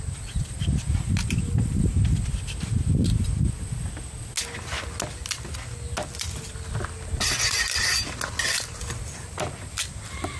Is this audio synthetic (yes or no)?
no